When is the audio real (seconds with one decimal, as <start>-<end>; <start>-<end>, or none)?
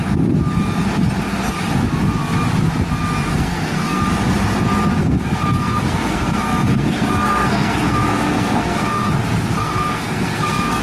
0.0-3.3; 4.0-4.9; 9.1-9.6